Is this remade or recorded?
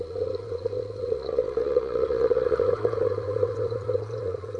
remade